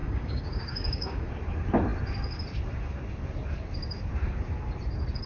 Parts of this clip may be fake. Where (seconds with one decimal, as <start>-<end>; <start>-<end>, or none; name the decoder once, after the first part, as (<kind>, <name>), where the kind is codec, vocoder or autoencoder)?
0.0-1.3 (codec, DAC)